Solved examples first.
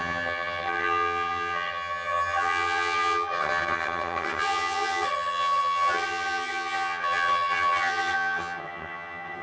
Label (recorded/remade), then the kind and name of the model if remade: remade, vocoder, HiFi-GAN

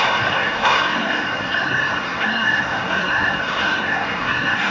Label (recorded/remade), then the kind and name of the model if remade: remade, codec, SNAC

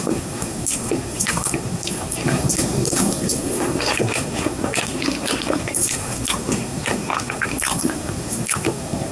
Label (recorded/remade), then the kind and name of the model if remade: remade, codec, SNAC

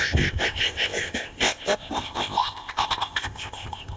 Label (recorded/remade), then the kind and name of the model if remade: remade, codec, ZipCodec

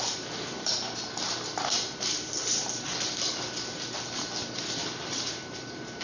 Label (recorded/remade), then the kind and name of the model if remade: remade, vocoder, BigVGAN v2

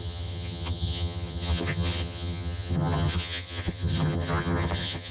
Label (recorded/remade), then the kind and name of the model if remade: remade, vocoder, HiFi-GAN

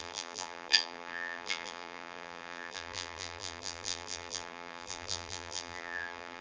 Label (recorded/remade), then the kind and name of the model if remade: remade, vocoder, BigVGAN v2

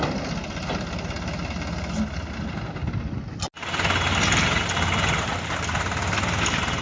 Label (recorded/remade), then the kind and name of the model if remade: recorded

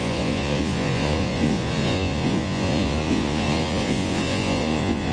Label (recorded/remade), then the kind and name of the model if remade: remade, vocoder, Vocos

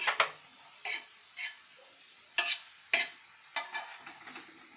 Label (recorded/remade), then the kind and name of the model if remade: recorded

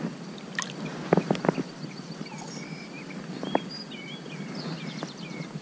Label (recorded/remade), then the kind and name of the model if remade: recorded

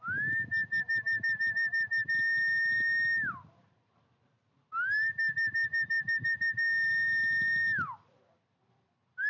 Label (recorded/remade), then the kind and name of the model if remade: recorded